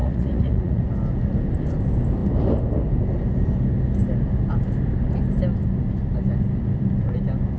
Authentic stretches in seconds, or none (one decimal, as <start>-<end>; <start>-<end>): 0.8-7.6